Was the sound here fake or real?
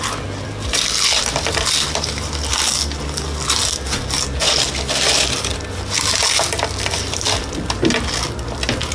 real